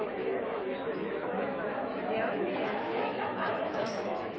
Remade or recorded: remade